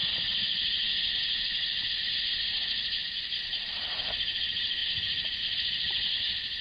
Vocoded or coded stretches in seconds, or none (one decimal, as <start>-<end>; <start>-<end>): 3.2-4.8; 5.4-6.6